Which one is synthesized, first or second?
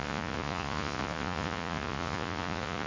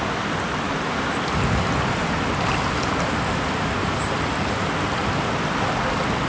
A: first